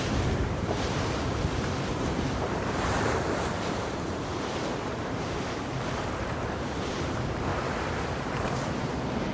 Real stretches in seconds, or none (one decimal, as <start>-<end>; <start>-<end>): 7.5-8.1